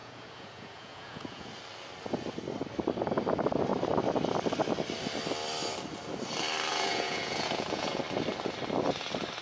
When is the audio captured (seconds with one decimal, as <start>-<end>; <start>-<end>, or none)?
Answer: 1.5-6.7; 8.0-9.4